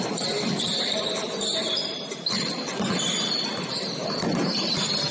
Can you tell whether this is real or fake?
real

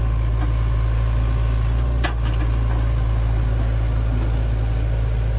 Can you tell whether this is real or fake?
real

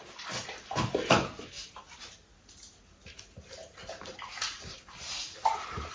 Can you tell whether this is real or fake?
real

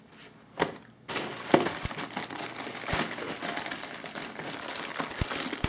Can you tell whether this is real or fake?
real